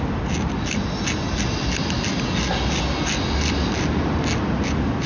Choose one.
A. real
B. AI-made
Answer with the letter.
A